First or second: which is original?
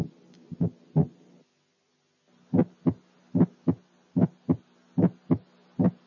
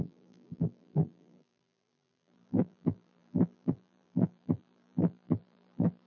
first